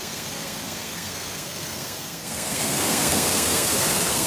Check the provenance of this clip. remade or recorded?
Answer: remade